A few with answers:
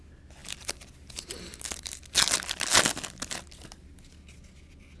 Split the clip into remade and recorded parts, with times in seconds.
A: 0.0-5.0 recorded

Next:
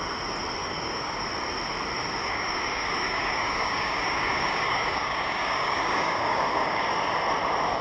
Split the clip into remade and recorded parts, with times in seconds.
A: 0.0-0.6 recorded; 0.6-1.2 remade; 1.2-2.2 recorded; 2.2-6.9 remade; 6.9-7.8 recorded

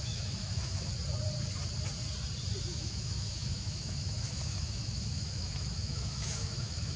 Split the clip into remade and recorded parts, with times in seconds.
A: 0.0-0.9 remade; 0.9-2.6 recorded; 2.6-7.0 remade

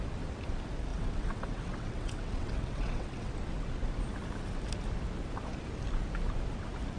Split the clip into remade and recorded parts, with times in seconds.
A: 0.0-0.9 recorded; 0.9-3.3 remade; 3.3-7.0 recorded

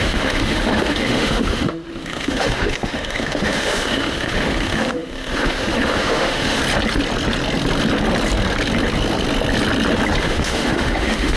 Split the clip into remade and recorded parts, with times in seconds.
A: 0.0-6.6 remade; 6.6-10.2 recorded; 10.2-11.4 remade

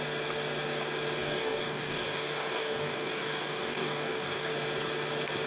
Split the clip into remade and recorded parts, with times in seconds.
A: 0.0-1.2 recorded; 1.2-4.5 remade; 4.5-5.5 recorded